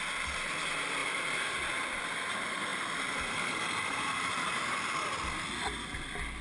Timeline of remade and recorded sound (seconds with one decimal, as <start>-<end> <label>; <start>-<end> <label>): 0.0-6.4 recorded